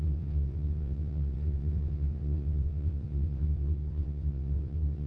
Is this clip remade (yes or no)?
yes